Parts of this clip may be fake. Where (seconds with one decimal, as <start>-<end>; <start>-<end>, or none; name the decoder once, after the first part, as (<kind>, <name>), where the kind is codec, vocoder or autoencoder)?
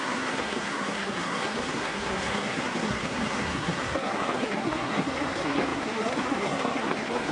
0.0-7.3 (codec, SNAC)